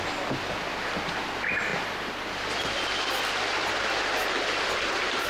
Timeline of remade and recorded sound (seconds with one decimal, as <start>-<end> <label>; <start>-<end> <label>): 0.0-5.3 recorded